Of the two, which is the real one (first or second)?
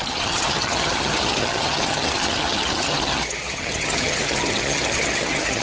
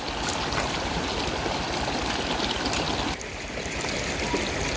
second